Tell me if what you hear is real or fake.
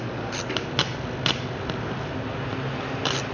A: real